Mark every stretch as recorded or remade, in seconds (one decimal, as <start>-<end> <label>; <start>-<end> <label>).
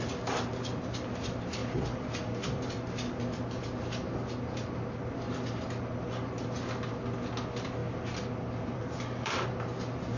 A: 0.0-1.6 recorded; 1.6-2.7 remade; 2.7-7.8 recorded; 7.8-9.5 remade; 9.5-10.2 recorded